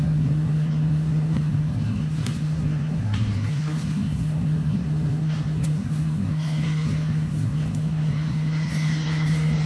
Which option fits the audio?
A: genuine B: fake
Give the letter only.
B